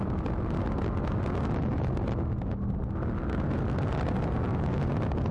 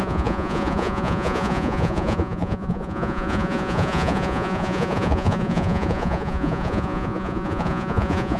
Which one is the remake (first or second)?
second